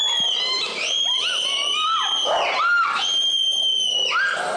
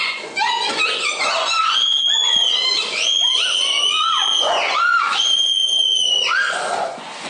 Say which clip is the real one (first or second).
first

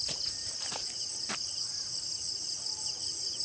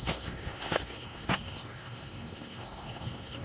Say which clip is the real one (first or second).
first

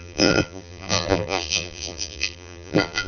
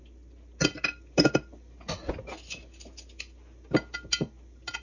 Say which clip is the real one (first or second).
second